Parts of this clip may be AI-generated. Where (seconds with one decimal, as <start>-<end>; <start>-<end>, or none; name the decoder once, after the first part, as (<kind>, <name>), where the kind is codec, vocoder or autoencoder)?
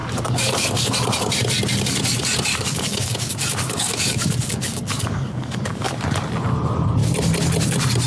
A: 0.0-0.9 (codec, DAC); 2.5-5.9